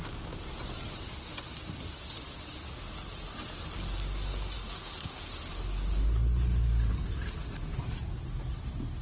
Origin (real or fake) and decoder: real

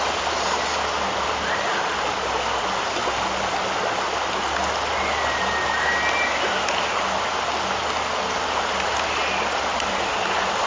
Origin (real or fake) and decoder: real